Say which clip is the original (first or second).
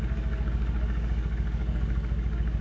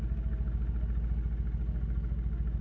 second